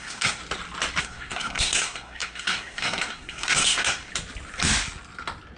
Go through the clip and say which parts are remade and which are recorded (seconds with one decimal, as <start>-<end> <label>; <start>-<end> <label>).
0.0-0.4 remade; 0.4-1.0 recorded; 1.0-4.1 remade; 4.1-5.6 recorded